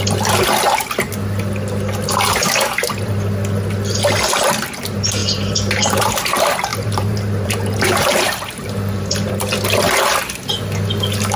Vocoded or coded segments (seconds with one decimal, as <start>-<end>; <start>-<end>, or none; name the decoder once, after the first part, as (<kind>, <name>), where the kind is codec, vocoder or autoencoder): 5.2-6.1 (vocoder, BigVGAN v2); 6.7-9.3